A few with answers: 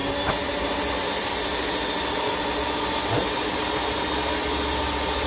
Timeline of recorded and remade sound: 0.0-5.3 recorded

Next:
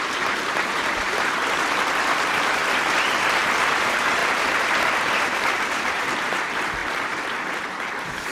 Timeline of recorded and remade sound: 0.0-1.4 remade; 1.4-2.1 recorded; 2.1-2.6 remade; 2.6-3.6 recorded; 3.6-6.8 remade; 6.8-7.6 recorded; 7.6-8.3 remade

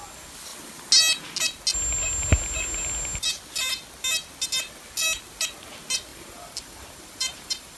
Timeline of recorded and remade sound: 0.0-6.1 recorded; 6.1-7.8 remade

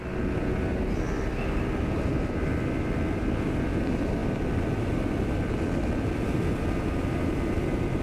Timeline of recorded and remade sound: 0.0-8.0 recorded

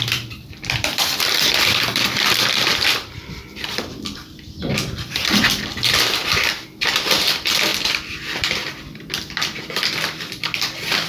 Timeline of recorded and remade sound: 0.0-11.1 remade

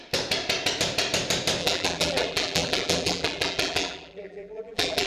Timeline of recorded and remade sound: 0.0-1.6 recorded; 1.6-5.1 remade